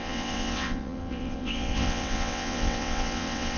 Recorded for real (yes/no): no